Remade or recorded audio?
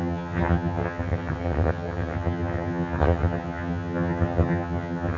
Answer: remade